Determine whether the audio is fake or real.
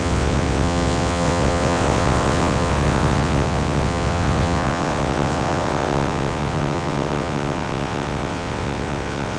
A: fake